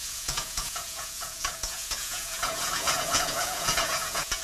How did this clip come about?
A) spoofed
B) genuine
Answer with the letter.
A